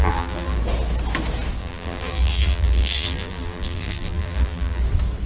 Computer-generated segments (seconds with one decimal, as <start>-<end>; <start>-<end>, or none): 0.0-0.6; 1.6-4.8